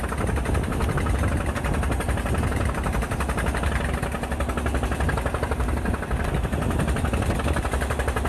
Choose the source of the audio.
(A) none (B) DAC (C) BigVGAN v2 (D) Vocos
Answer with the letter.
A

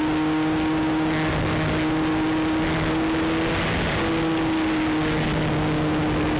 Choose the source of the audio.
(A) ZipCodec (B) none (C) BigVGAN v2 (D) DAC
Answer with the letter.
B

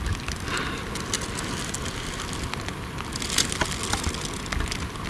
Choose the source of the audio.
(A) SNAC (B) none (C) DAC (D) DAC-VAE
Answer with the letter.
B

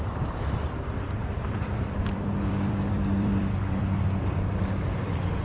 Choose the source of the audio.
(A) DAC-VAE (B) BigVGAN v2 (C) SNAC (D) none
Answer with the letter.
B